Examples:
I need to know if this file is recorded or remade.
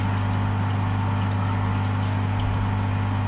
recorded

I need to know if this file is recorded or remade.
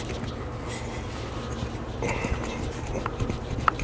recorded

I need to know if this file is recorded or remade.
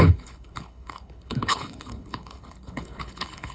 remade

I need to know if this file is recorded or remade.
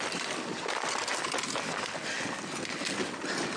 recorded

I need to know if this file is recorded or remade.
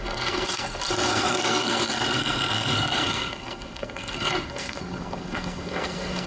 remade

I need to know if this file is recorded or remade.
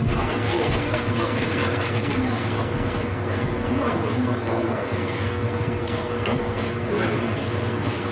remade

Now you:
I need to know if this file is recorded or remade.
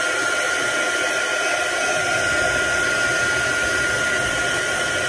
recorded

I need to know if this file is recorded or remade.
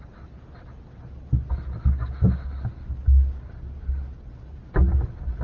recorded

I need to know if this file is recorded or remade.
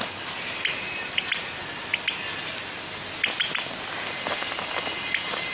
recorded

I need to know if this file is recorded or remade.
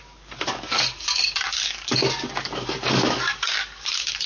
remade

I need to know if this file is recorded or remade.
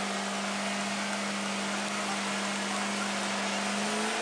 recorded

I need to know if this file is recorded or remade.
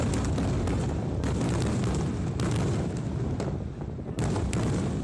recorded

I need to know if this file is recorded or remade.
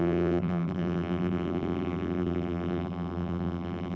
remade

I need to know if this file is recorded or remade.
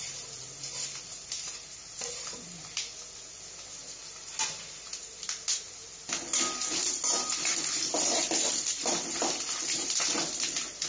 recorded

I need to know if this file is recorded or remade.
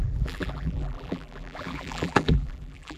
remade